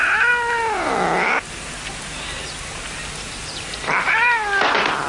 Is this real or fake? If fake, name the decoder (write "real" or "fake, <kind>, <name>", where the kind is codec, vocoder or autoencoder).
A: real